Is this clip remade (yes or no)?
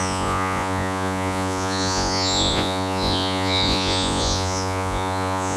yes